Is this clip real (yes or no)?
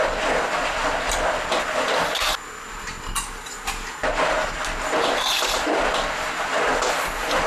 yes